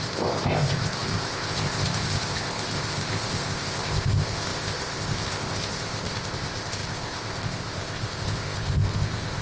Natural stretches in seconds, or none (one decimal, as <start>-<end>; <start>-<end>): none